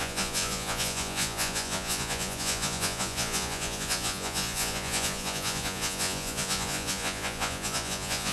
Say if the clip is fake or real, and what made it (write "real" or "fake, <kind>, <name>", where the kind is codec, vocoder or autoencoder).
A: fake, vocoder, Vocos